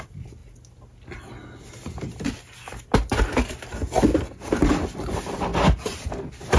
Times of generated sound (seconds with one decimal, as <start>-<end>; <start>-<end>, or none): none